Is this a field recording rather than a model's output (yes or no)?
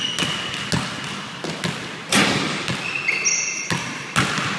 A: yes